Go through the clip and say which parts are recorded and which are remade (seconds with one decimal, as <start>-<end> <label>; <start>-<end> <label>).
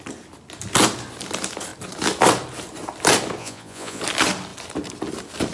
0.0-3.4 recorded; 3.4-4.0 remade; 4.0-5.5 recorded